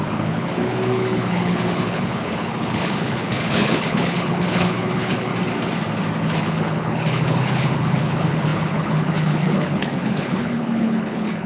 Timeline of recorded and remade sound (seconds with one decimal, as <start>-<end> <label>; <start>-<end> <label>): 0.0-5.3 remade; 5.3-6.2 recorded; 6.2-11.5 remade